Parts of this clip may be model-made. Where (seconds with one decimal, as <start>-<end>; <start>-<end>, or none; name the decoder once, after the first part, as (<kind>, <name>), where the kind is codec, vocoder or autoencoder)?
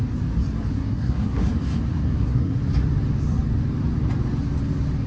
0.7-1.5 (codec, SNAC); 1.9-2.6